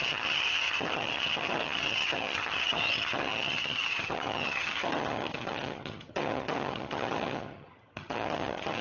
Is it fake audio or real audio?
fake